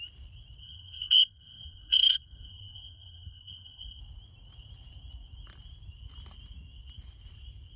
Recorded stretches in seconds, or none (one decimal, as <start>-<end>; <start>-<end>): 0.0-0.6; 4.0-7.8